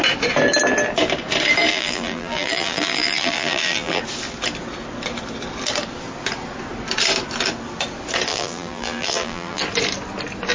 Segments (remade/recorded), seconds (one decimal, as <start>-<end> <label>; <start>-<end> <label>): 0.0-1.7 recorded; 1.7-4.0 remade; 4.0-8.3 recorded; 8.3-9.6 remade; 9.6-10.5 recorded